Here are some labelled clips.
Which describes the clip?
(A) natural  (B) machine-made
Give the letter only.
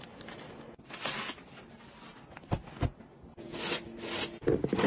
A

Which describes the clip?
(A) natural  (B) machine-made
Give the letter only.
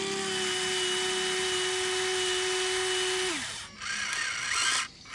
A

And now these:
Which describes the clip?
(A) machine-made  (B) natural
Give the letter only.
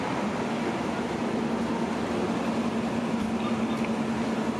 B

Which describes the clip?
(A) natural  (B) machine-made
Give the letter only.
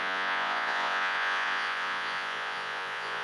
B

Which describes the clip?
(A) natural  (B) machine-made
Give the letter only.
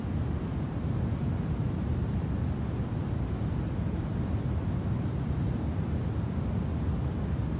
A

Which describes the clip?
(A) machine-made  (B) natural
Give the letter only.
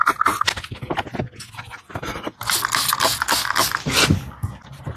B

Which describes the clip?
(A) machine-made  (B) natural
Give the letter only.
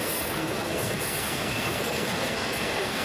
A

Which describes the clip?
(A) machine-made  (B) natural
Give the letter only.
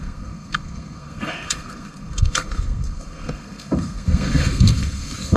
A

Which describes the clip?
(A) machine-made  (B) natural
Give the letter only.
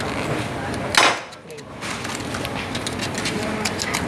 B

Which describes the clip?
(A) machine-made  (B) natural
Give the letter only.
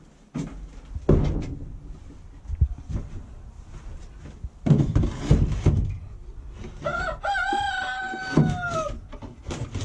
B